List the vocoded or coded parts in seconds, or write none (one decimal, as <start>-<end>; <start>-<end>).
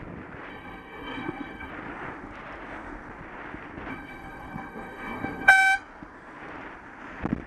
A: 0.5-1.7; 3.9-5.5